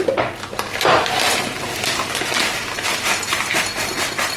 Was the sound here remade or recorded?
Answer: recorded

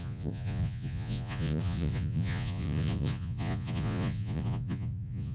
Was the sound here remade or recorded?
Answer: remade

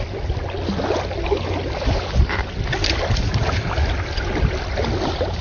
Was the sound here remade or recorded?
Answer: recorded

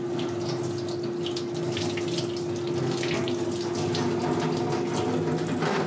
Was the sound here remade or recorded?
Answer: recorded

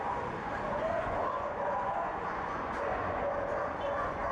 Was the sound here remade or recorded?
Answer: remade